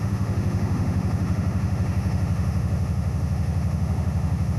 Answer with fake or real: fake